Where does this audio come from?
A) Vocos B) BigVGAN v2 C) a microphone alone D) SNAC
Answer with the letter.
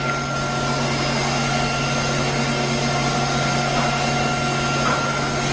C